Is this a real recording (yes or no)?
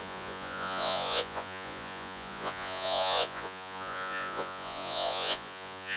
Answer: no